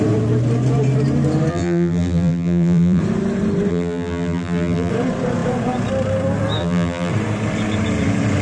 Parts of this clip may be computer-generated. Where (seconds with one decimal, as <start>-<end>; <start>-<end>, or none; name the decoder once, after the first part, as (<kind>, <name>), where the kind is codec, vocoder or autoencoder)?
1.5-3.0 (vocoder, BigVGAN v2); 3.7-4.9; 6.6-7.1